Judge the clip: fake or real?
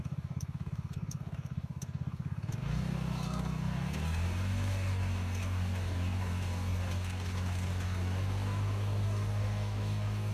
fake